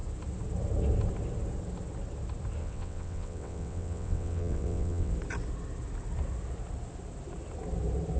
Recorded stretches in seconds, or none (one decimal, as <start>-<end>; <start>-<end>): 0.0-2.6; 5.1-8.2